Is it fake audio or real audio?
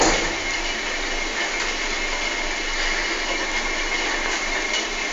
real